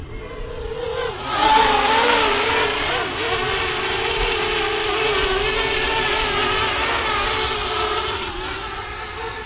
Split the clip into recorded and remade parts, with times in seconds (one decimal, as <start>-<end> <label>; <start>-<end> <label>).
0.0-9.5 recorded